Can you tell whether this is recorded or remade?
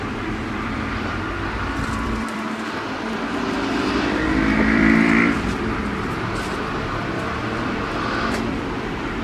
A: remade